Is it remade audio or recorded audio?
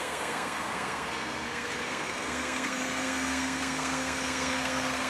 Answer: remade